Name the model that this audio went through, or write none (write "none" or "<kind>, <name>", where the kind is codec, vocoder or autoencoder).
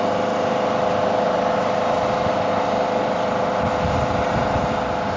none